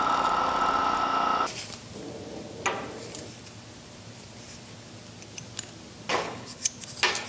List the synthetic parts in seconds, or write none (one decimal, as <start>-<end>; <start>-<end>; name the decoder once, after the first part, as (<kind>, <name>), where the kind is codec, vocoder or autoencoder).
6.1-6.7 (codec, HILCodec)